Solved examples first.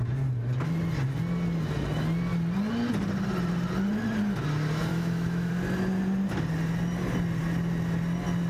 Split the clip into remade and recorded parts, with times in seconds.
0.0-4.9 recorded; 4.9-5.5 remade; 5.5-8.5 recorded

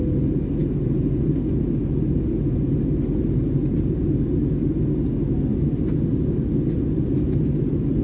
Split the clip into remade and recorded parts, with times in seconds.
0.0-8.0 recorded

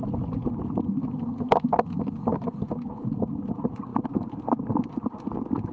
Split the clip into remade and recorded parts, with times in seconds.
0.0-5.7 recorded

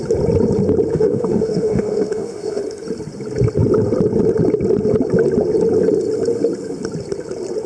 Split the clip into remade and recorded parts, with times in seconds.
0.0-0.9 recorded; 0.9-2.6 remade; 2.6-7.7 recorded

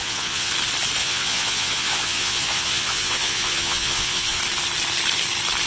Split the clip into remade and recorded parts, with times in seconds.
0.0-0.5 remade; 0.5-1.0 recorded; 1.0-4.4 remade; 4.4-5.7 recorded

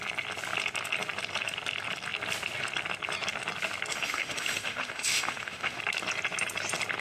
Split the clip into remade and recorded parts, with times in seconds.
0.0-3.9 recorded; 3.9-5.8 remade; 5.8-7.0 recorded